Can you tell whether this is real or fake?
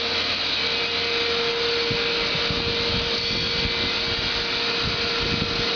real